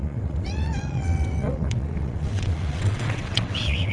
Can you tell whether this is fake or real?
fake